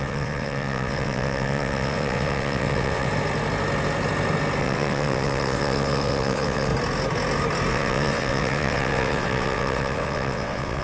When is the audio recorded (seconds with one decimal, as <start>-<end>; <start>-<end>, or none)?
3.1-4.6; 6.7-7.7